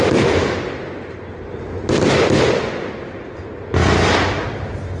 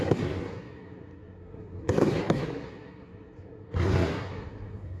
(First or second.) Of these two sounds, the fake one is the second